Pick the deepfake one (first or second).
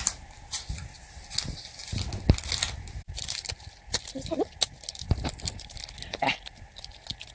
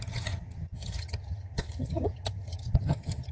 second